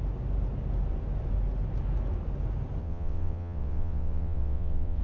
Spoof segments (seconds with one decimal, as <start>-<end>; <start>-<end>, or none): 2.8-5.0